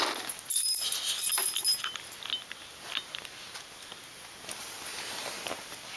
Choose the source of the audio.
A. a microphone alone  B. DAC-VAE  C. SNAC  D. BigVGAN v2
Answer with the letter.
A